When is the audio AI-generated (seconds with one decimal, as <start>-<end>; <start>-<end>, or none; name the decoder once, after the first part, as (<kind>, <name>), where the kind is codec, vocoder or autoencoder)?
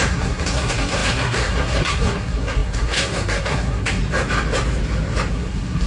0.0-4.0 (codec, SNAC); 5.3-5.9